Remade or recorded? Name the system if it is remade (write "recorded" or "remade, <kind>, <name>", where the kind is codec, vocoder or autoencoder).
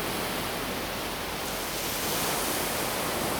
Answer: recorded